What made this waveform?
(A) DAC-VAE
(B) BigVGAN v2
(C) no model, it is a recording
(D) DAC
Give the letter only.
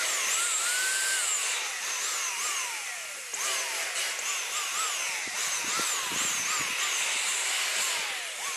C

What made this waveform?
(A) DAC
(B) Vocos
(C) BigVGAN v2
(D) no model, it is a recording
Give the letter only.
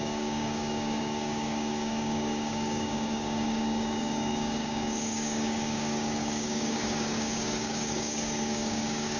A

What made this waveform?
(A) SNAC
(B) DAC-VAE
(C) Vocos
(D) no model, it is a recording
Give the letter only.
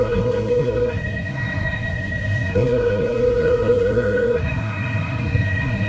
A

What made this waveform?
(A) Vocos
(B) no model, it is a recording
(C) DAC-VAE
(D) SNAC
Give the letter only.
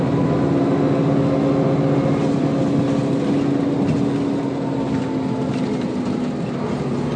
B